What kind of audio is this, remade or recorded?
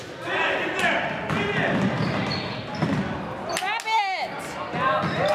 recorded